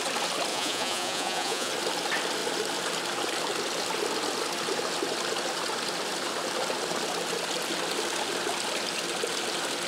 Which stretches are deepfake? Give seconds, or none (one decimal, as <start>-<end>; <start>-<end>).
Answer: 0.5-1.7